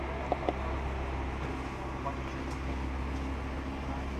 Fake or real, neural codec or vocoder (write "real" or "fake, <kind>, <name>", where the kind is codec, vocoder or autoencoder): real